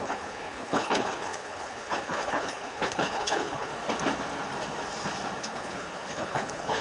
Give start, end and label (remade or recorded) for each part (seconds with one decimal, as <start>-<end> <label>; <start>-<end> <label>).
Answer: 0.0-3.7 remade; 3.7-5.4 recorded; 5.4-6.8 remade